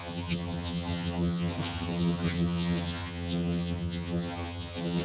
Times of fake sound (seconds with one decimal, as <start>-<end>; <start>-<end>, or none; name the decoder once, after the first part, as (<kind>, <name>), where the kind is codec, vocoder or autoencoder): 0.0-5.0 (vocoder, HiFi-GAN)